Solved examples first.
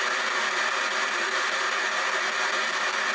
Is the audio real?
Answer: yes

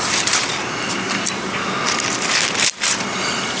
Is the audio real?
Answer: yes